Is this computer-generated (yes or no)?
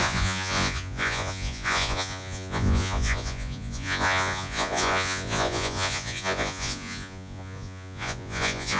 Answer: yes